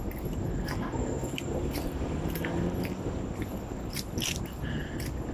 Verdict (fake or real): real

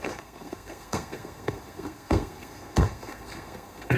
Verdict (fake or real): fake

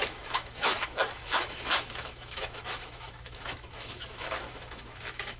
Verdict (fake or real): fake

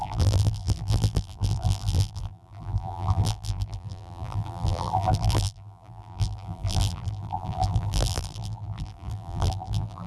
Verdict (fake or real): fake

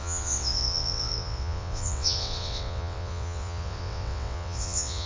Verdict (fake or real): fake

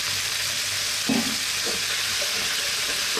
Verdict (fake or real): real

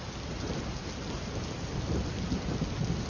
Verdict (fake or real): real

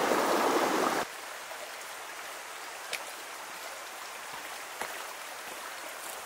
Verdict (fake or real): real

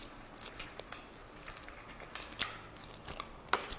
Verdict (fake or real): real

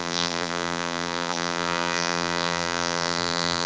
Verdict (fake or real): fake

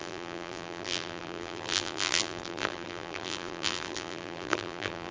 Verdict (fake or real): fake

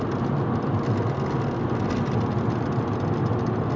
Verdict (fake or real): real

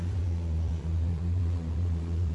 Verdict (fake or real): fake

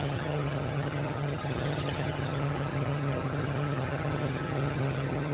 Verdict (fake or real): fake